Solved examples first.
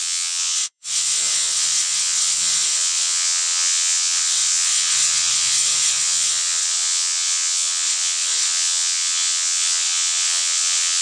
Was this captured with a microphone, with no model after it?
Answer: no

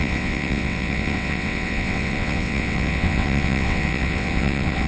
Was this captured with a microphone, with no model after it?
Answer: no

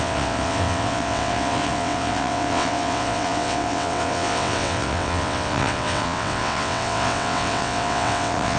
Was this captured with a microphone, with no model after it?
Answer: no